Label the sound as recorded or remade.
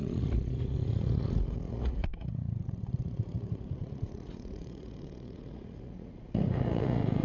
remade